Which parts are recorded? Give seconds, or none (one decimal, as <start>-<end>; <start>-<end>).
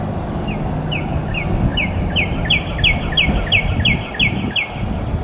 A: 0.0-5.2